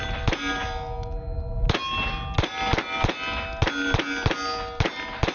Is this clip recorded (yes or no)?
yes